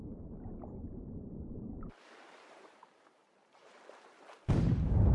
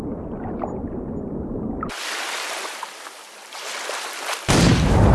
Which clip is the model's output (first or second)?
first